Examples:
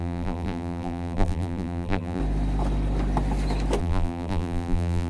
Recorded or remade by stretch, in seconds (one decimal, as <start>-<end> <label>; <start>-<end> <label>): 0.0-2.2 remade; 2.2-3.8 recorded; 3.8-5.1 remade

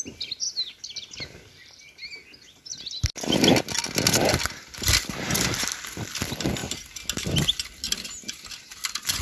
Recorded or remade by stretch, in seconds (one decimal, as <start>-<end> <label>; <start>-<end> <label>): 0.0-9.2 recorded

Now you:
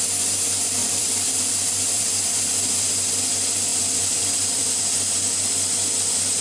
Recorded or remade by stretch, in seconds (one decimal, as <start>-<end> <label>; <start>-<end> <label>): 0.0-0.8 recorded; 0.8-2.9 remade; 2.9-3.7 recorded; 3.7-4.8 remade; 4.8-6.4 recorded

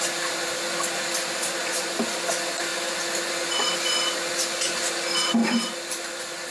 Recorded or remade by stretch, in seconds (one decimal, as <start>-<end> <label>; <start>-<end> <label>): 0.0-5.4 recorded; 5.4-6.5 remade